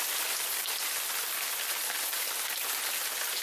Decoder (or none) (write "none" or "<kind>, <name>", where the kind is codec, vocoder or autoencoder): none